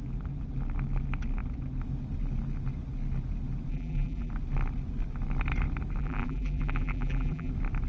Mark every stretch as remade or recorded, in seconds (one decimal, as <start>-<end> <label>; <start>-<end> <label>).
0.0-3.7 recorded; 3.7-4.3 remade; 4.3-6.0 recorded; 6.0-7.5 remade; 7.5-7.9 recorded